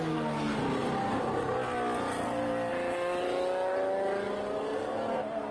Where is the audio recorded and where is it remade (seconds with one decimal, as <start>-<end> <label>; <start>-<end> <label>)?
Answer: 0.0-5.5 recorded